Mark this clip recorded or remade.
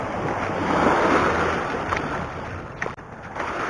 recorded